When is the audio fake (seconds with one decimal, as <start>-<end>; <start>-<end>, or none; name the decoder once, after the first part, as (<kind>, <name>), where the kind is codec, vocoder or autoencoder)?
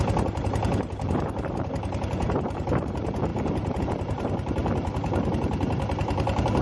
0.0-4.6 (vocoder, BigVGAN v2); 5.3-6.6